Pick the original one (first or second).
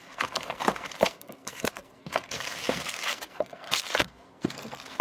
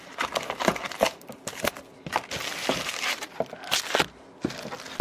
second